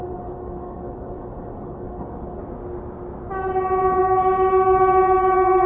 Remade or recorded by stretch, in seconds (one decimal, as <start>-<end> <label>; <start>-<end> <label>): 0.0-2.4 remade; 2.4-4.0 recorded; 4.0-5.7 remade